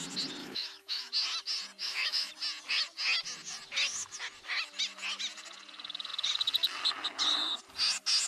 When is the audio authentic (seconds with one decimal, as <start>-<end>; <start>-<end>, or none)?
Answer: 0.0-0.4; 1.1-1.8; 2.3-8.3